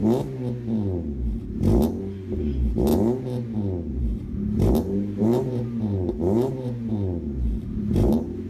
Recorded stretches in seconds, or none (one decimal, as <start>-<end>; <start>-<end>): 0.0-2.0; 2.9-3.9